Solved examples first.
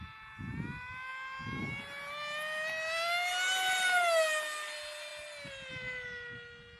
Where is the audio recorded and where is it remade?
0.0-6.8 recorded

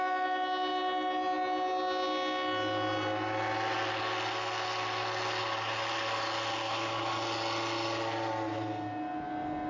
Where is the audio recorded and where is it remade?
0.0-9.7 recorded